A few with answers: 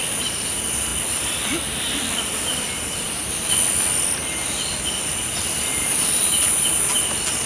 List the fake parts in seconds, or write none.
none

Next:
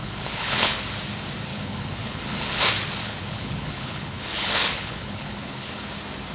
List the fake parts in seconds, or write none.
0.0-0.8 (codec, HILCodec); 1.5-2.6; 3.0-5.7

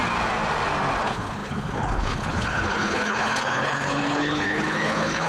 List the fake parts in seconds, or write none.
1.0-5.3 (codec, HILCodec)